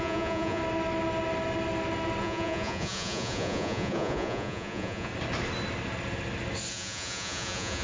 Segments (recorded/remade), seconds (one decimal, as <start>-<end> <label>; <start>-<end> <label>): 0.0-0.6 remade; 0.6-2.2 recorded; 2.2-5.1 remade; 5.1-6.7 recorded; 6.7-7.8 remade